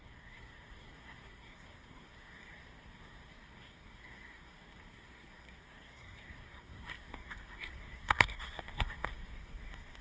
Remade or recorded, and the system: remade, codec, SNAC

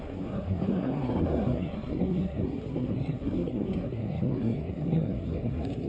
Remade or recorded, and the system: remade, codec, SNAC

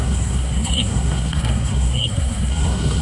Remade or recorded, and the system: remade, codec, SNAC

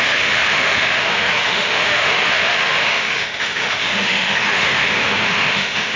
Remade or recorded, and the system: remade, autoencoder, DAC-VAE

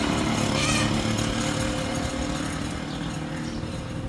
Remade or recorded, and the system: recorded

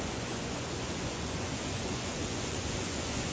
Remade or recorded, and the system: remade, vocoder, Vocos